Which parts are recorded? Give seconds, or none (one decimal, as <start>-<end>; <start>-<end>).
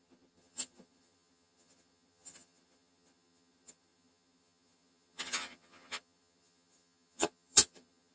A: none